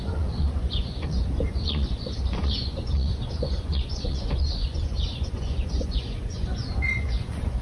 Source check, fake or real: fake